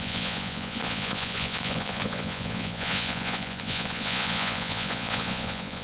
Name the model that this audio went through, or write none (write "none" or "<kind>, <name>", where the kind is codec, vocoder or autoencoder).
vocoder, Vocos